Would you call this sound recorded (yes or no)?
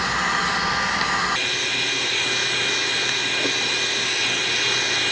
yes